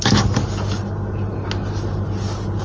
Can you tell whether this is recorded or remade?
recorded